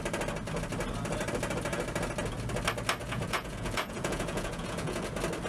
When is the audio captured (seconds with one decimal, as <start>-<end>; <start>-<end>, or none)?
0.0-3.0; 5.1-5.5